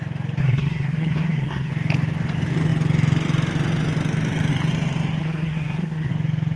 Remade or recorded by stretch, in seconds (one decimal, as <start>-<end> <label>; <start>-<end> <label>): 0.0-0.4 recorded; 0.4-1.7 remade; 1.7-5.2 recorded; 5.2-6.1 remade; 6.1-6.6 recorded